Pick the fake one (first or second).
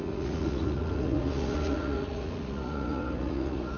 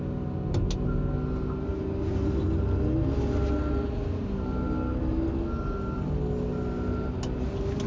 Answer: first